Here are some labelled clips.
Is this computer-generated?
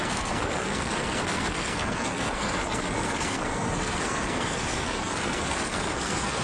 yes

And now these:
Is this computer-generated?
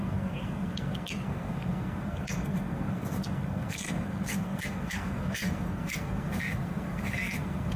yes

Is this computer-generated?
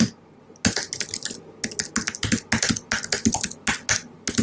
no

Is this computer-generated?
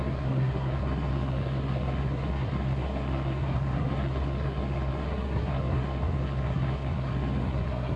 yes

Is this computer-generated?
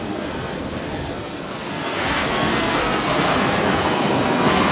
yes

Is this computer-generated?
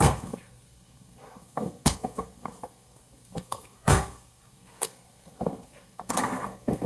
yes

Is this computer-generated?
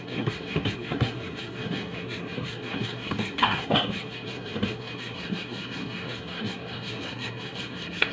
yes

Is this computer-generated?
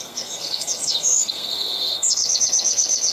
yes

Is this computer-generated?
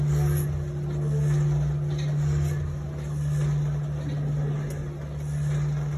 no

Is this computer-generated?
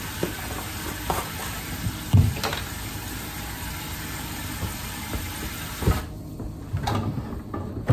no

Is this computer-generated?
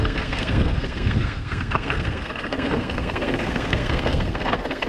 yes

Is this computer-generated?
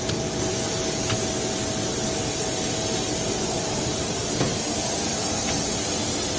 no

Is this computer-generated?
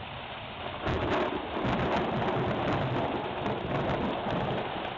no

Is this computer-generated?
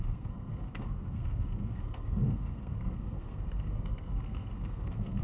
yes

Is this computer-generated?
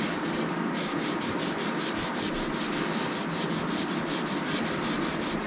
no